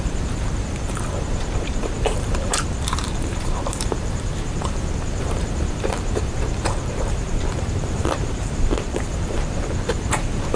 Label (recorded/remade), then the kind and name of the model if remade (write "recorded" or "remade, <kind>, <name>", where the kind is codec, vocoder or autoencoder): remade, vocoder, BigVGAN v2